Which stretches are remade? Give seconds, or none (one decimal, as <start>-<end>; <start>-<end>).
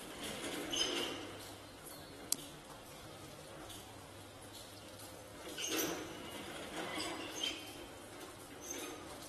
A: 6.9-7.5